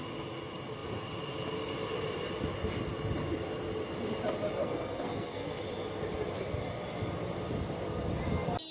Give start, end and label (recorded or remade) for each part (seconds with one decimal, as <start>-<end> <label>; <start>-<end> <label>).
0.0-4.6 recorded; 4.6-5.6 remade; 5.6-8.7 recorded